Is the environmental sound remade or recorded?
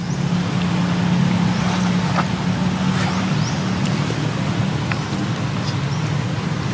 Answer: recorded